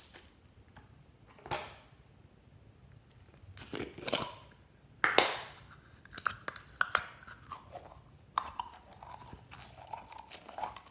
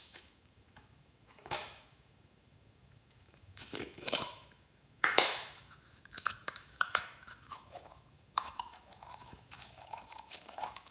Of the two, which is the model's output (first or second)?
second